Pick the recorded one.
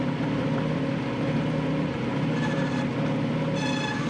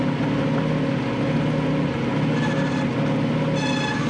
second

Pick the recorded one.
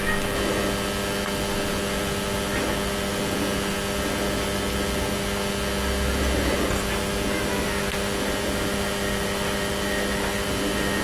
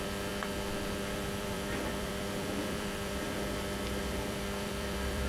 first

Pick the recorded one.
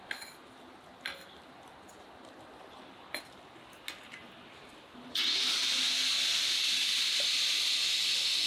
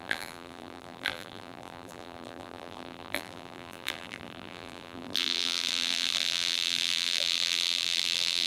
first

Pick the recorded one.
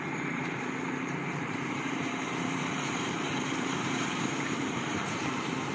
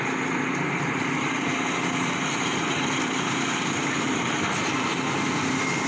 second